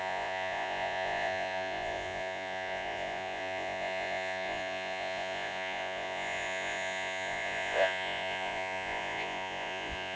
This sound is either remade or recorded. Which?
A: remade